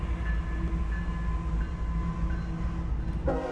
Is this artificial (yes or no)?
no